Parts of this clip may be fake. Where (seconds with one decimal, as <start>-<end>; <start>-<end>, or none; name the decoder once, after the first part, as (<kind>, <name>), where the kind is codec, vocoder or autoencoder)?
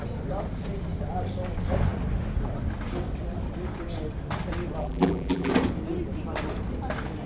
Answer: 4.8-5.5 (vocoder, BigVGAN v2)